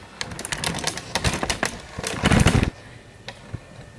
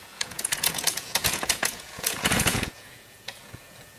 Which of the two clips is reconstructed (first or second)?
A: second